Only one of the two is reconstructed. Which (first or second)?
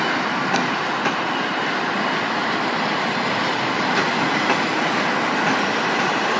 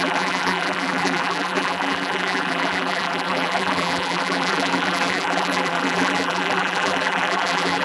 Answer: second